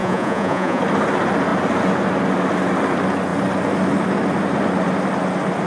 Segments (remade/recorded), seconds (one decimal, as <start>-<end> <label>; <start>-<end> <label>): 0.0-0.8 remade; 0.8-5.7 recorded